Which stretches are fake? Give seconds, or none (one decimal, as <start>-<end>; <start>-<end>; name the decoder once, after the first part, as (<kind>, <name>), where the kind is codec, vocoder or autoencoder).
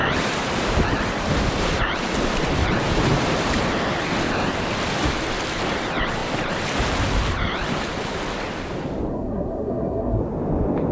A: 9.1-10.2 (codec, SNAC)